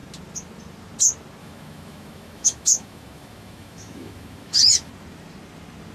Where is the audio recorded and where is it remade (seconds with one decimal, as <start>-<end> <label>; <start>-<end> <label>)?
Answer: 0.0-1.4 recorded; 1.4-4.9 remade; 4.9-5.9 recorded